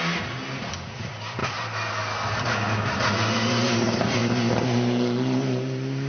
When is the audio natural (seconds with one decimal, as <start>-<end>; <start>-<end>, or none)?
0.0-6.1